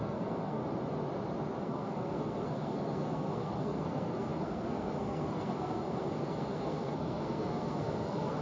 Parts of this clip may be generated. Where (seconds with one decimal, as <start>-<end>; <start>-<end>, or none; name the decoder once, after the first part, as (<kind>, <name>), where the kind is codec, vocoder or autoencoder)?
0.0-0.6 (codec, SNAC); 1.6-8.4